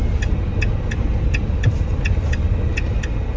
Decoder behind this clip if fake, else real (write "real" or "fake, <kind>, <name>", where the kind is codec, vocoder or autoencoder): real